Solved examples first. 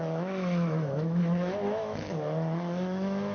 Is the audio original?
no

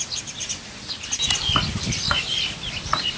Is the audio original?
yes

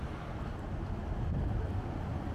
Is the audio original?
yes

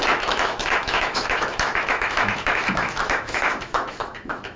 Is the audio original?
no